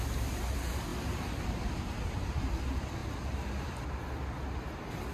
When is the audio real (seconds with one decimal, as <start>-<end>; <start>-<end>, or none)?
0.0-0.9; 1.8-5.1